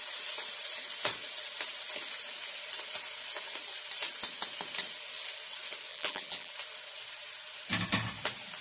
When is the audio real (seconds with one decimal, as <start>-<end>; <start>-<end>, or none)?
0.0-5.9; 6.5-8.6